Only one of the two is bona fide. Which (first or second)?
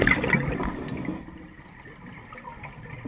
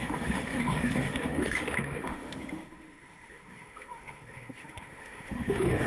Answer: first